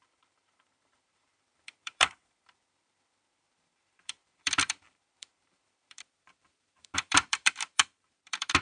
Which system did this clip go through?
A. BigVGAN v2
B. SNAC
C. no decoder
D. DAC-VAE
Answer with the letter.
A